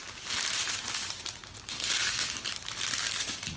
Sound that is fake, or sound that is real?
fake